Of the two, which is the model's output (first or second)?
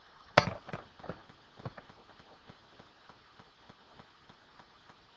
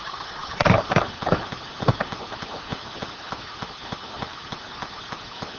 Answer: second